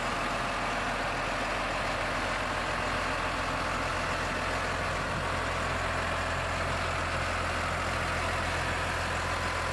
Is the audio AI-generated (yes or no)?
no